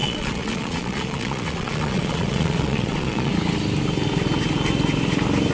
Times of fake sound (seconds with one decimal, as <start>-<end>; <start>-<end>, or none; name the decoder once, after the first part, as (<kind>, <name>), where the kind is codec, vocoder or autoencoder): 0.0-3.3 (vocoder, Vocos)